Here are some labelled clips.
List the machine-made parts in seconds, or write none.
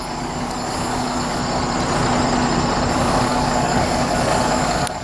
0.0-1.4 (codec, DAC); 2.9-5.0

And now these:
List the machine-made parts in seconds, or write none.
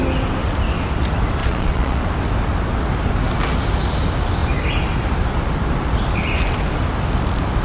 1.4-2.0 (vocoder, Vocos)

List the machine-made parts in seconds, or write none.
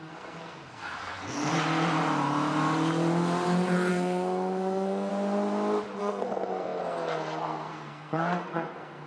0.0-1.5 (codec, SNAC); 3.9-5.1; 6.0-9.1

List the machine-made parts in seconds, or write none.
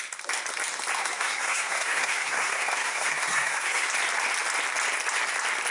1.0-3.9 (codec, SNAC)